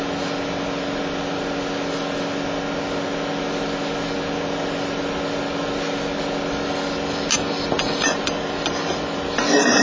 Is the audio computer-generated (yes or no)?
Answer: no